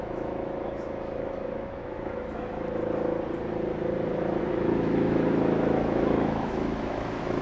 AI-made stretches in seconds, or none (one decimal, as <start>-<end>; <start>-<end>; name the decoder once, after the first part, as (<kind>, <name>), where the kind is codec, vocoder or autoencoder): 0.0-2.8 (autoencoder, DAC-VAE); 4.5-7.4